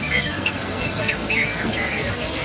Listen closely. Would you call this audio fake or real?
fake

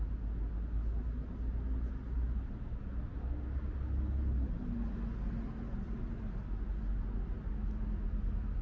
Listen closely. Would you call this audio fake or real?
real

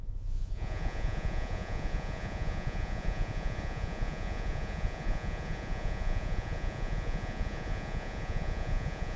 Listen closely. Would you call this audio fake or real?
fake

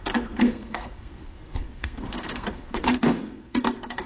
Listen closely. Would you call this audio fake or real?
fake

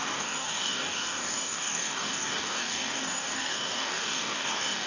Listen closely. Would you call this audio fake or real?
fake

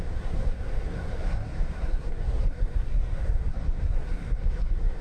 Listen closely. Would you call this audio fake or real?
fake